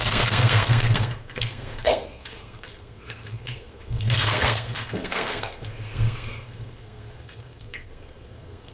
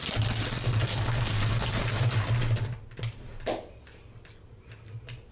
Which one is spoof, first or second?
first